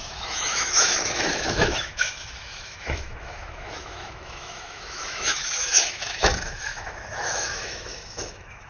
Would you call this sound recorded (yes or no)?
no